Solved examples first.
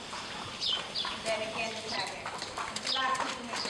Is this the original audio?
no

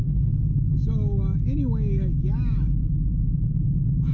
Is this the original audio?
no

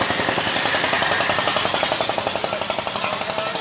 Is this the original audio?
yes